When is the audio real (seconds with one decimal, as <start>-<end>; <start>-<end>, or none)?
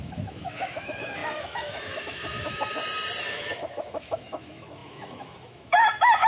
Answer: 2.8-3.3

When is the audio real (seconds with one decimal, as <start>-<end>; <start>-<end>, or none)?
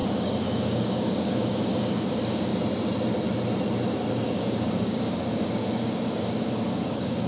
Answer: 2.5-4.1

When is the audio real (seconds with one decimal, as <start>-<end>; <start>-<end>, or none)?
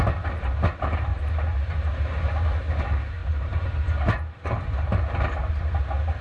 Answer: 0.0-1.1; 1.8-3.2; 5.8-6.2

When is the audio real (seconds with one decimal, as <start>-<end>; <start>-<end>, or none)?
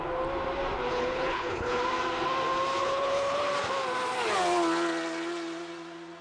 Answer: 0.0-0.9; 1.8-2.8; 3.5-6.2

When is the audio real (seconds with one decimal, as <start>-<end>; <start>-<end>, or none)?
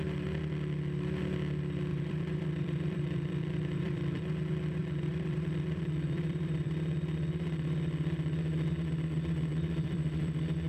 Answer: 0.0-1.9; 4.2-4.8; 6.7-9.5